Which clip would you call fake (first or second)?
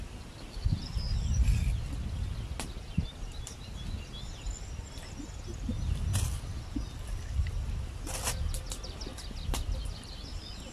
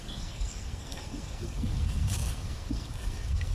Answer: second